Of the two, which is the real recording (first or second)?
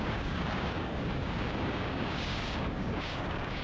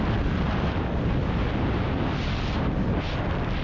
second